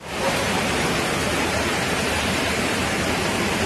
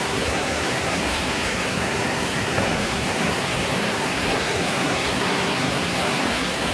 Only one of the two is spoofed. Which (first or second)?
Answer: second